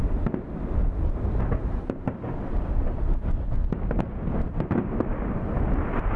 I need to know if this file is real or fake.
real